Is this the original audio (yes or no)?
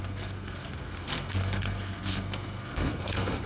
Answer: no